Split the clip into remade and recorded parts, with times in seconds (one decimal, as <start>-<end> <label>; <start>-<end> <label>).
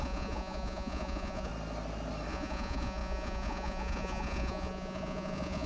0.0-1.5 remade; 1.5-2.3 recorded; 2.3-5.7 remade